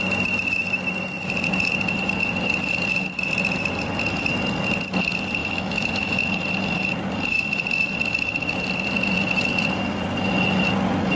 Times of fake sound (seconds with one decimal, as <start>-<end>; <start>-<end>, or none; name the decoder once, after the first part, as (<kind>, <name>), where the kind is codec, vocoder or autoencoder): 5.4-6.2 (autoencoder, DAC-VAE)